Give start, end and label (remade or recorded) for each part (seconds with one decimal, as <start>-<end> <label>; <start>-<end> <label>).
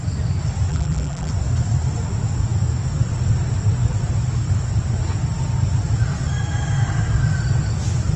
0.0-0.7 recorded; 0.7-1.3 remade; 1.3-8.2 recorded